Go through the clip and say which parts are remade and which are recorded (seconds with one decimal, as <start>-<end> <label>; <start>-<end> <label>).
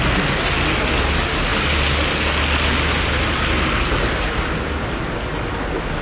0.0-6.0 recorded